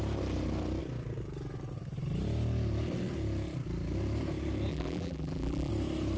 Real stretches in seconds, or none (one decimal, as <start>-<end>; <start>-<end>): 0.0-4.7; 5.7-6.2